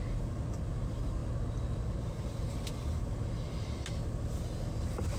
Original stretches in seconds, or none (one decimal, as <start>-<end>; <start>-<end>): 0.0-5.2